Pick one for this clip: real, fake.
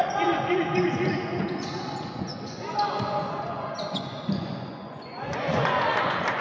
fake